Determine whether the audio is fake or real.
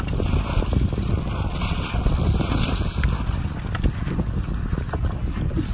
real